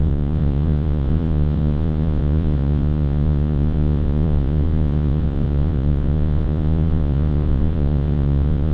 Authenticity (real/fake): fake